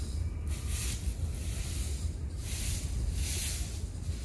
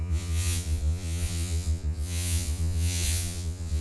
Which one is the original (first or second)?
first